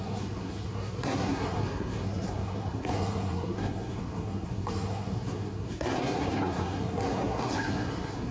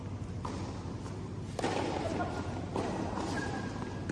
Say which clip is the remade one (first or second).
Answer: first